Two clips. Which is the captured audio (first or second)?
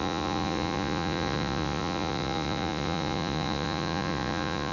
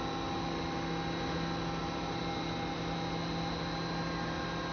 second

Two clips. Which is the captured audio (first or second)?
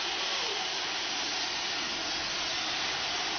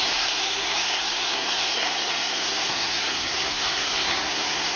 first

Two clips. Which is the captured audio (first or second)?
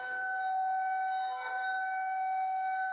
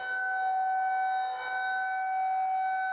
second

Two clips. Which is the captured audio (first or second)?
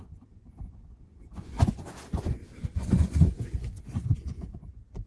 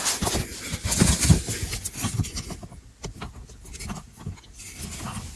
second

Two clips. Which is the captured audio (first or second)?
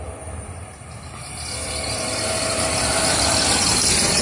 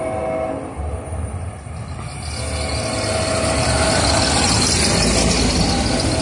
second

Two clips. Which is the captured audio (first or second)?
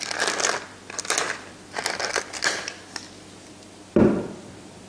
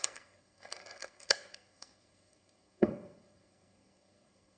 first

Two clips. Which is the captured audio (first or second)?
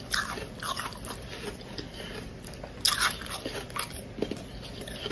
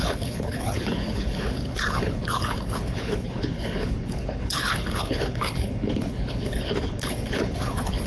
first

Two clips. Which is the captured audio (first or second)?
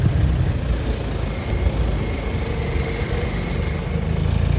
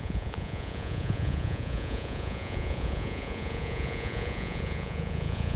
first